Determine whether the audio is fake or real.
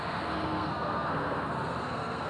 fake